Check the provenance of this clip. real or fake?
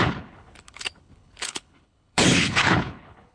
fake